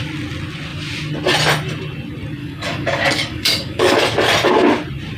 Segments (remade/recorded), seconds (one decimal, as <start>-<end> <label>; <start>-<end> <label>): 0.0-2.4 recorded; 2.4-4.0 remade; 4.0-5.2 recorded